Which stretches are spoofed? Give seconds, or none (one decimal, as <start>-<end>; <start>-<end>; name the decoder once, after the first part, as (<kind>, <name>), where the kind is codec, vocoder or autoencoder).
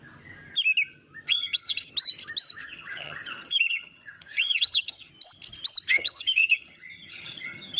1.3-1.9 (vocoder, HiFi-GAN); 2.6-5.1; 5.9-7.8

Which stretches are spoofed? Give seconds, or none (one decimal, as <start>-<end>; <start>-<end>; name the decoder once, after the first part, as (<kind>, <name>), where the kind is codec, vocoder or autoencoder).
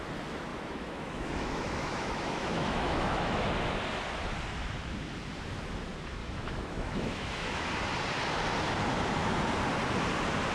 0.5-3.5 (autoencoder, DAC-VAE); 6.2-7.7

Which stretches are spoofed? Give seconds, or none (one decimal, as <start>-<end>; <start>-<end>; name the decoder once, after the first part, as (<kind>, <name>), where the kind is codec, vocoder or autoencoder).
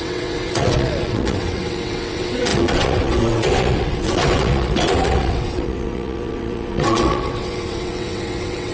0.0-8.7 (vocoder, WaveNeXt)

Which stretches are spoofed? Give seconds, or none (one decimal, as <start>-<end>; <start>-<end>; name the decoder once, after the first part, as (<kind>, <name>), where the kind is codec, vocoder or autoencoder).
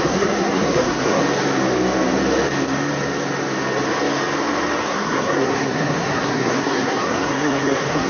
0.0-1.2 (codec, SNAC); 4.8-8.1